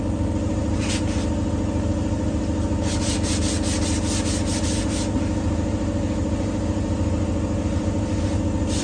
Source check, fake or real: real